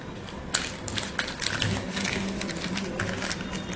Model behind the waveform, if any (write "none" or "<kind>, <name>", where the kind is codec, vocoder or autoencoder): none